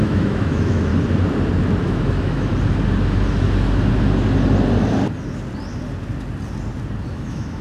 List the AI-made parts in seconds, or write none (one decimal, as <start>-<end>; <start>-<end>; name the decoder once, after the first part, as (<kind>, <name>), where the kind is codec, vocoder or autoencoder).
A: 0.0-0.9 (autoencoder, DAC-VAE); 1.8-2.5; 7.1-7.6